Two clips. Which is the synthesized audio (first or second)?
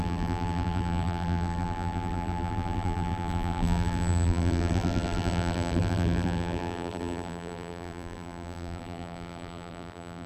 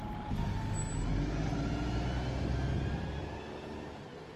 first